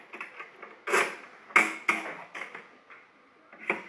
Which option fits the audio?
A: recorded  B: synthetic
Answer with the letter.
A